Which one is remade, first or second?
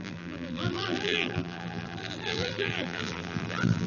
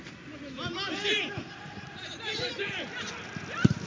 first